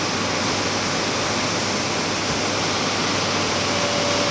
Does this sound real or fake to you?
real